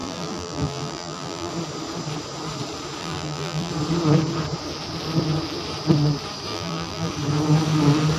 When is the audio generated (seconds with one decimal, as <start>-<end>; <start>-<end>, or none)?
0.0-1.5; 3.0-3.7; 6.5-7.1

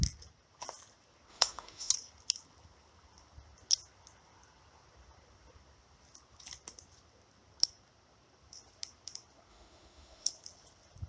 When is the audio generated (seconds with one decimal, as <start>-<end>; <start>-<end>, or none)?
1.3-1.9; 9.5-10.3

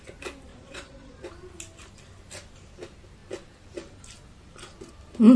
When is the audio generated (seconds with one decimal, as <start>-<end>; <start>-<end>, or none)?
0.5-1.3

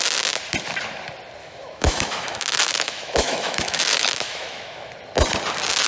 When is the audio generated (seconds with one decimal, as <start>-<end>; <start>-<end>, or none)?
1.4-4.9